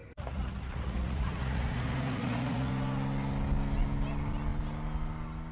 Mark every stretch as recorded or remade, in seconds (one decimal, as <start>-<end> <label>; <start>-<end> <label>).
0.0-2.7 remade; 2.7-5.5 recorded